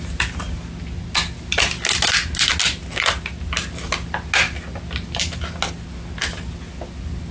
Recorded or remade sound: recorded